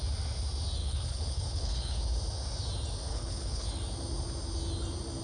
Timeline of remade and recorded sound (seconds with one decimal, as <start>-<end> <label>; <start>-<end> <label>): 0.0-0.8 recorded; 0.8-2.0 remade; 2.0-3.1 recorded; 3.1-3.7 remade; 3.7-5.2 recorded